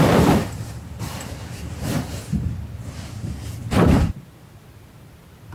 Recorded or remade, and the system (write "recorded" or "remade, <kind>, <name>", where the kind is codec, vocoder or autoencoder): recorded